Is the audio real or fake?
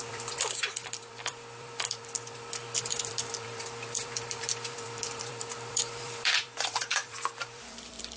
fake